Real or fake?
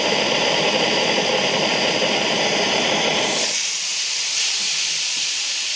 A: fake